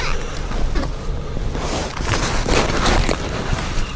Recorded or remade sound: recorded